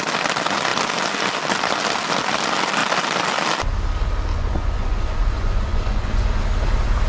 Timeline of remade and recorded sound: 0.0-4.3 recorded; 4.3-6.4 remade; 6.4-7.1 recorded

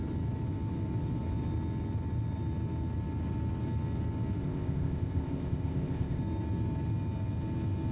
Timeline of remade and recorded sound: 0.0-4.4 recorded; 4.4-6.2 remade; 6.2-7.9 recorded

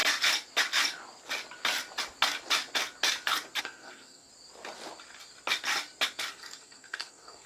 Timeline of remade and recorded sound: 0.0-3.6 recorded; 3.6-4.3 remade; 4.3-6.3 recorded; 6.3-7.5 remade

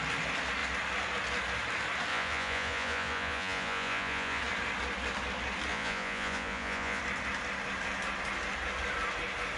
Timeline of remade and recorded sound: 0.0-2.1 recorded; 2.1-4.4 remade; 4.4-5.7 recorded; 5.7-7.0 remade; 7.0-9.6 recorded

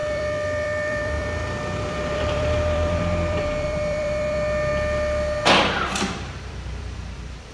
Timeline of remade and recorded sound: 0.0-4.7 remade; 4.7-5.7 recorded; 5.7-7.5 remade

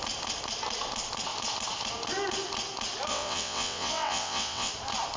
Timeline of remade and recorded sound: 0.0-3.1 recorded; 3.1-4.7 remade; 4.7-5.2 recorded

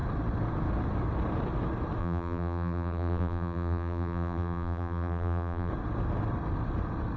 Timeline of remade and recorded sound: 0.0-2.0 recorded; 2.0-5.7 remade; 5.7-7.2 recorded

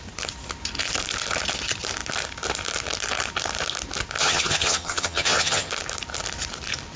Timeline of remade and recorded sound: 0.0-4.2 recorded; 4.2-5.7 remade; 5.7-7.0 recorded